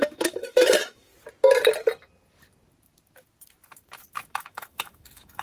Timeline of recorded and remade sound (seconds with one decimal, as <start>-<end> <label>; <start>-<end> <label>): 0.0-1.1 remade; 1.1-4.3 recorded; 4.3-5.4 remade